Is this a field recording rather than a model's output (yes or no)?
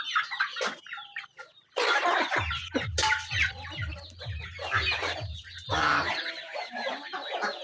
yes